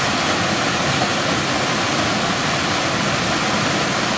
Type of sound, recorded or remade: recorded